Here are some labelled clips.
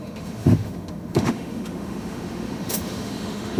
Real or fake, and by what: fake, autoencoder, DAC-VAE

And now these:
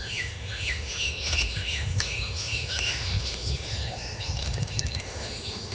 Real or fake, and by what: fake, autoencoder, DAC-VAE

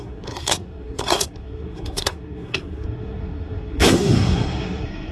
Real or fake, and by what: fake, codec, SNAC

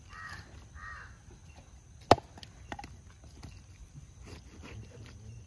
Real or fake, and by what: real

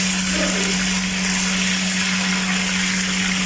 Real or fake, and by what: real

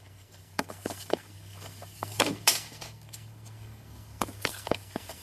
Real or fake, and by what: fake, codec, SNAC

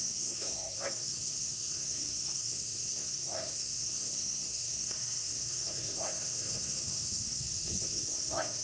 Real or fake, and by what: fake, codec, SNAC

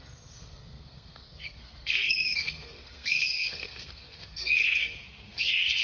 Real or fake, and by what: fake, codec, SNAC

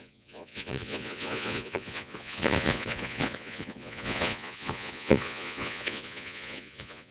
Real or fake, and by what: fake, vocoder, Vocos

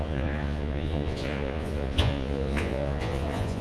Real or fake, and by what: fake, vocoder, Vocos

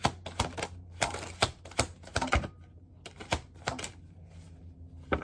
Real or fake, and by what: real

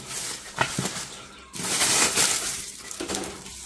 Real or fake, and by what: real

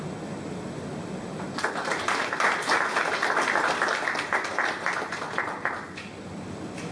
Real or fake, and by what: real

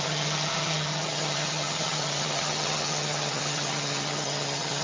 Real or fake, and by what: fake, vocoder, HiFi-GAN